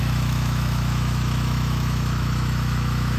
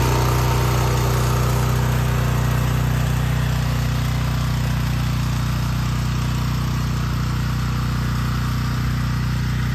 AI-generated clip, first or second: first